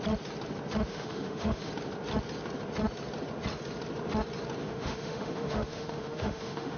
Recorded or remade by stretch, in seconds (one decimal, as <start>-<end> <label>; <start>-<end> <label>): 0.0-0.9 recorded; 0.9-1.7 remade; 1.7-4.6 recorded; 4.6-6.8 remade